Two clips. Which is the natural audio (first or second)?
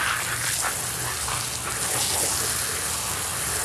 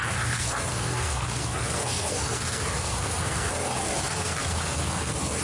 first